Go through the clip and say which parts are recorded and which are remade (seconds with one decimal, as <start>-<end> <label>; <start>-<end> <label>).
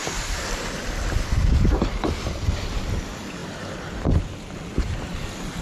0.0-5.6 remade